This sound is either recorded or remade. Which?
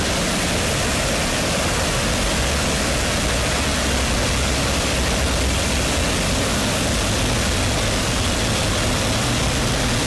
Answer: recorded